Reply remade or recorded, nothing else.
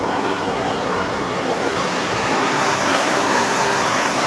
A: remade